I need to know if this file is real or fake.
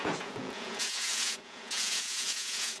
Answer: fake